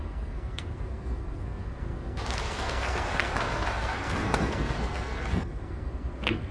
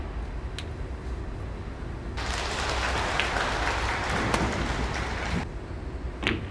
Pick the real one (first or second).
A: second